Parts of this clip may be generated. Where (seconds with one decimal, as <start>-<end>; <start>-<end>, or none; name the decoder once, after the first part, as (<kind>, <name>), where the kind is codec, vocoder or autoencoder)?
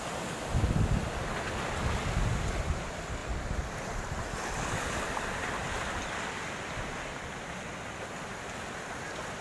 5.6-7.5 (vocoder, BigVGAN v2)